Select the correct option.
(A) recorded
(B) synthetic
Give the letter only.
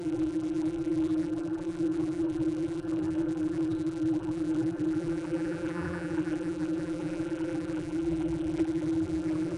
B